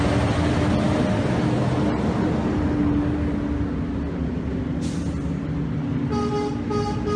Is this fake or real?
real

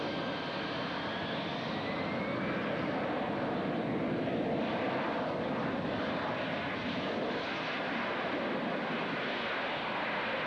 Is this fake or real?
real